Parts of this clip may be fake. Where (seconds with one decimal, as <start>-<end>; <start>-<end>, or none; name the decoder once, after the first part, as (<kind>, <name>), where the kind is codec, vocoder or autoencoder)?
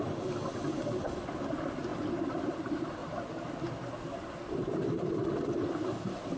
none